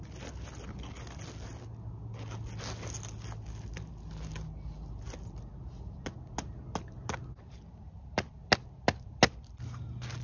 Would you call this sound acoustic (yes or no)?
yes